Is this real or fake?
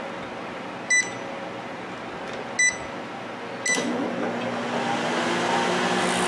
real